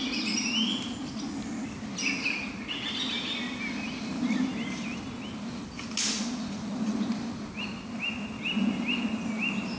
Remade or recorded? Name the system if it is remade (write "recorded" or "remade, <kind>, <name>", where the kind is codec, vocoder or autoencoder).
recorded